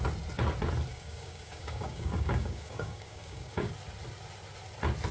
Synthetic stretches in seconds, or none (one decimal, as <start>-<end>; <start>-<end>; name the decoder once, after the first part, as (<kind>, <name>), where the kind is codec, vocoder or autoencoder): 0.9-3.7 (codec, DAC)